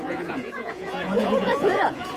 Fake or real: fake